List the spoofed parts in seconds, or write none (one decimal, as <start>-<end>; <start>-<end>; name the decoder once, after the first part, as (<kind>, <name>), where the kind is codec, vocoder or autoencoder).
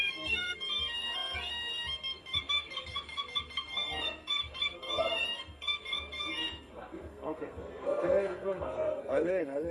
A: 0.0-9.7 (codec, SNAC)